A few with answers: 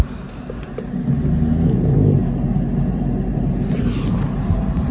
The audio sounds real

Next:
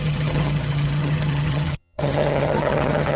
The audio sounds fake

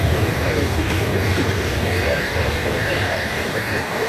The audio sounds fake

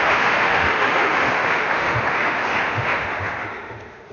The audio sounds fake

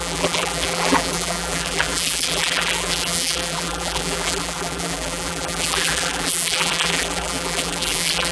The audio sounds fake